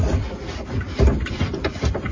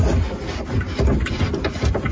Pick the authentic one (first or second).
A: second